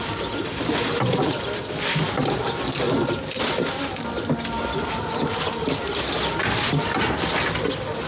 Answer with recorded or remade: recorded